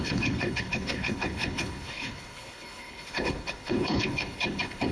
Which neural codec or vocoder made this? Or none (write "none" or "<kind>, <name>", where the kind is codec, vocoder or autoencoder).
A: codec, HILCodec